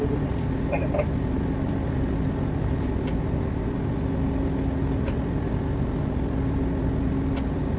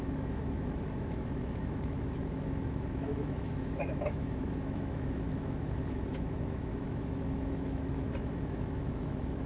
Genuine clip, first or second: first